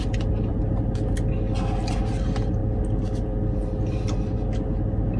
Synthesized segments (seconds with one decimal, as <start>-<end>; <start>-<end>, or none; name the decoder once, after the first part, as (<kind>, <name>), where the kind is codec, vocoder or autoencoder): none